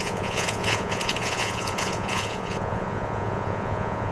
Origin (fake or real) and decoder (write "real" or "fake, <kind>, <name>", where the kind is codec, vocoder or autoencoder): fake, vocoder, Vocos